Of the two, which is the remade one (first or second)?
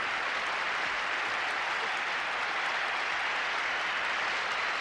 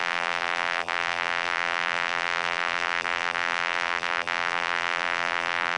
second